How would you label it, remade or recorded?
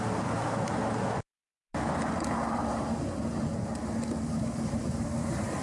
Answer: recorded